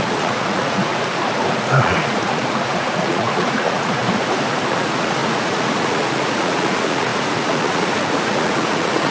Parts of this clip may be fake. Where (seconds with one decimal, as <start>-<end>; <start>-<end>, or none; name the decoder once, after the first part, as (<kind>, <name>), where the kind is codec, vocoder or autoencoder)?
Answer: 0.0-0.9 (vocoder, Vocos); 1.8-4.0; 4.7-9.1